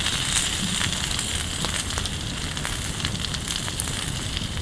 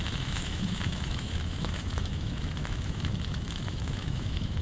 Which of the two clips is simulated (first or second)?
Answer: second